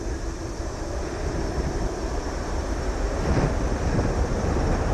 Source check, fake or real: real